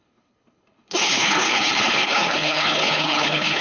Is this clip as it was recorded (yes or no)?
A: no